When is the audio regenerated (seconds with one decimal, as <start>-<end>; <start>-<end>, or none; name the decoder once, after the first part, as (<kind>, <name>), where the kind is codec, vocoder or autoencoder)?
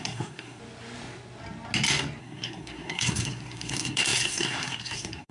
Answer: 0.0-0.6 (codec, SNAC); 2.2-5.3